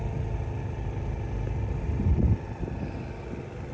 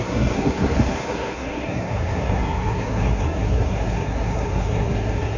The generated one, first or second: second